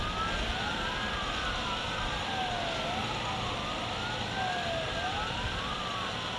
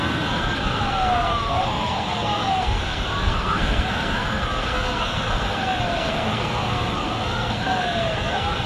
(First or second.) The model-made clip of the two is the second